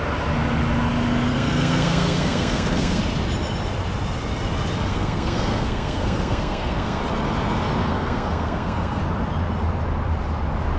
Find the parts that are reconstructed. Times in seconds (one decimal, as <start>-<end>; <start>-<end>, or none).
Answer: 1.3-3.0; 4.9-7.0; 7.8-9.0